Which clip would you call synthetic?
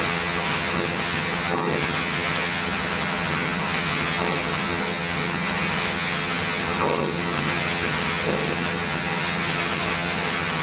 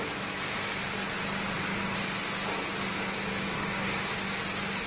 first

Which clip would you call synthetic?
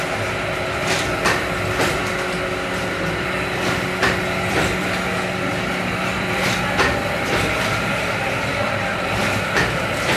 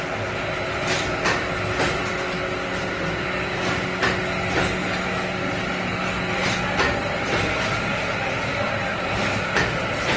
first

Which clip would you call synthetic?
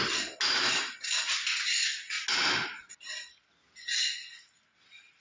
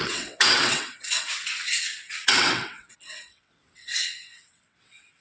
second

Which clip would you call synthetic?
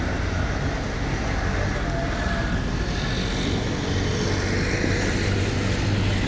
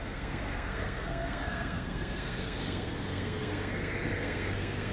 second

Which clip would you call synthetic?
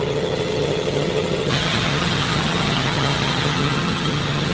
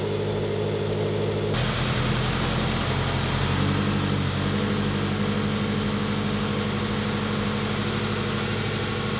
first